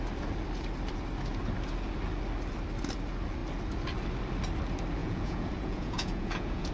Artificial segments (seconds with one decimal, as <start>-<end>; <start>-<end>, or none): 5.0-6.7